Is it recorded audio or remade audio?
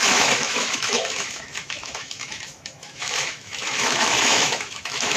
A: remade